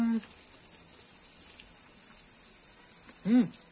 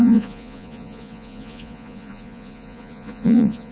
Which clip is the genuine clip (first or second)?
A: first